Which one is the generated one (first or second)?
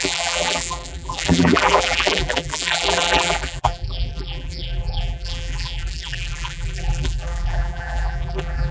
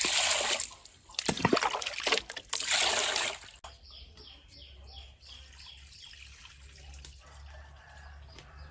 first